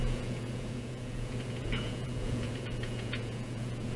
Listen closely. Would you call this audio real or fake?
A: fake